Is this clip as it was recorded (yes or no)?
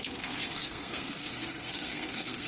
no